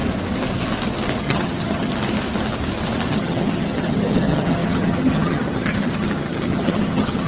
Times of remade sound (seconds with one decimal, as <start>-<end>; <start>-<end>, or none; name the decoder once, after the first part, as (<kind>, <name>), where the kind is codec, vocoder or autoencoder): 1.2-1.9 (vocoder, HiFi-GAN); 3.1-7.3